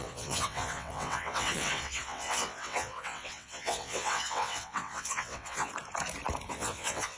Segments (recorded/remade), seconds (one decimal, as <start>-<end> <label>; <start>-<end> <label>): 0.0-5.7 remade; 5.7-6.5 recorded; 6.5-7.2 remade